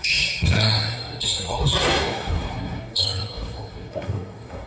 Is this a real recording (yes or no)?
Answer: no